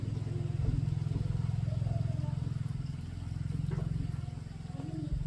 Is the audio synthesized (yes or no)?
no